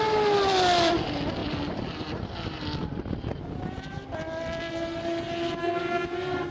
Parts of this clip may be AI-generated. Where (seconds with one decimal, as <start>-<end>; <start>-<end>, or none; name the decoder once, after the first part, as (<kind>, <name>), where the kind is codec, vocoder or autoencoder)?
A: 5.6-6.5 (codec, SNAC)